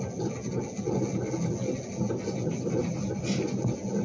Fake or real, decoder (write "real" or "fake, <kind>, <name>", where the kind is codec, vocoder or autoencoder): real